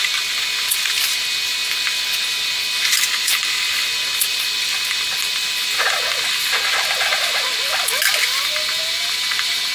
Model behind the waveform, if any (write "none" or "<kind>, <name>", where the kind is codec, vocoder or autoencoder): none